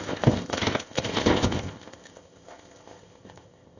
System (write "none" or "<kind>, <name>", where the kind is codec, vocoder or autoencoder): codec, ZipCodec